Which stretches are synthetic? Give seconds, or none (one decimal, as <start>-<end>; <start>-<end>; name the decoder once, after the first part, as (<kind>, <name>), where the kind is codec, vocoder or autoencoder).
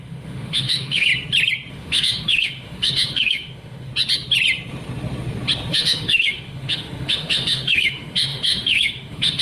0.0-1.1 (autoencoder, DAC-VAE); 1.7-3.9; 5.7-9.4